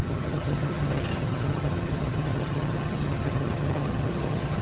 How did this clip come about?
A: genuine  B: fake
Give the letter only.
B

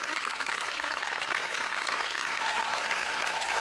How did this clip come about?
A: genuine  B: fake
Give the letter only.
B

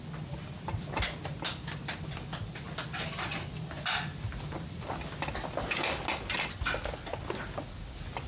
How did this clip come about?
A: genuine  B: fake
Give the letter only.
A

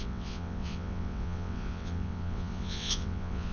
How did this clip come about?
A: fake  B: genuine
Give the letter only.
A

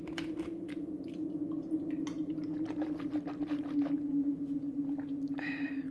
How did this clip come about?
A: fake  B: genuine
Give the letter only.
B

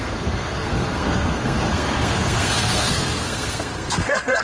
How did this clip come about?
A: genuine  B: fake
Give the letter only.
B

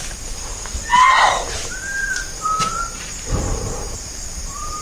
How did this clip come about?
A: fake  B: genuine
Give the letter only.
A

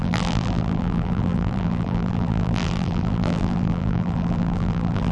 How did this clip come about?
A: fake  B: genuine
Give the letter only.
A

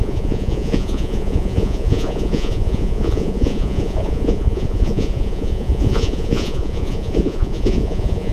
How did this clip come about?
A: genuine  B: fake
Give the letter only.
B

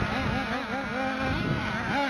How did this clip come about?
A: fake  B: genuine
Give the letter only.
B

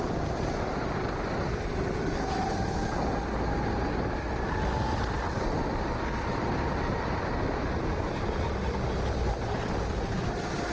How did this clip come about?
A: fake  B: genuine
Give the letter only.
B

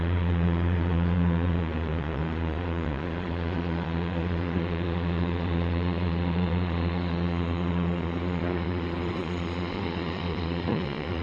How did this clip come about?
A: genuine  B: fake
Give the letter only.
B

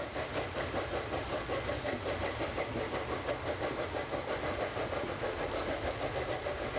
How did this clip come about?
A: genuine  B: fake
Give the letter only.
A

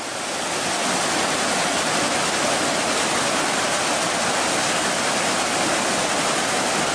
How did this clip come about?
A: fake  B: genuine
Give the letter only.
B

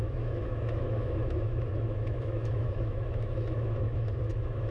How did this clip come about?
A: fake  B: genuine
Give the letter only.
A